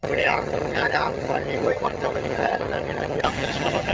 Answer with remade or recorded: remade